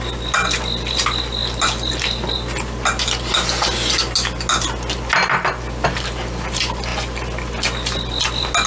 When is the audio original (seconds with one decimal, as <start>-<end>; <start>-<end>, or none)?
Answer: 0.0-8.7